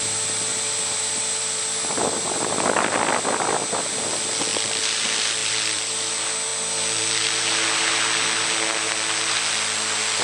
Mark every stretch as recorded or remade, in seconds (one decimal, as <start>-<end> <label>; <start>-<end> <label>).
0.0-0.5 recorded; 0.5-1.6 remade; 1.6-5.4 recorded; 5.4-6.1 remade; 6.1-10.2 recorded